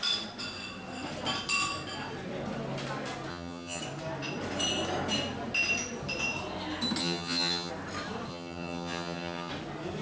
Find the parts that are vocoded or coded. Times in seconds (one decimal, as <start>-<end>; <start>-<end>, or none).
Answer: 3.3-3.8; 7.0-7.7; 8.3-9.5